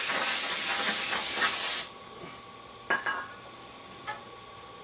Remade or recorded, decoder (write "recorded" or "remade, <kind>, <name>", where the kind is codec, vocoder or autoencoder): recorded